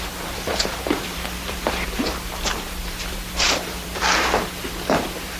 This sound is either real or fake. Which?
fake